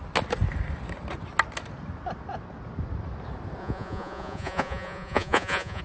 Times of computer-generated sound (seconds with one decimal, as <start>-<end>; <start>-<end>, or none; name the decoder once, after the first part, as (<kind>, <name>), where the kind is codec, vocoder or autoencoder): 3.6-5.8 (vocoder, Vocos)